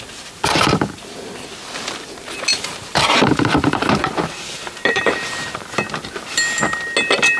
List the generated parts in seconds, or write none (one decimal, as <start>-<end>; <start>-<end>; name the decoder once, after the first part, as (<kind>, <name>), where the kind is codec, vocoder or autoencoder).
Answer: 2.5-5.6 (vocoder, BigVGAN v2)